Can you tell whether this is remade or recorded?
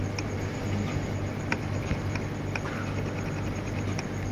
recorded